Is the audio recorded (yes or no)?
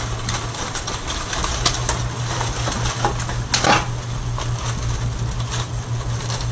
yes